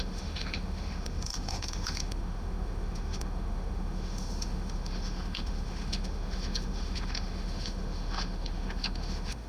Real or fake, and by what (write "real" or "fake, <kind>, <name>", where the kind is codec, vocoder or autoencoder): fake, autoencoder, DAC-VAE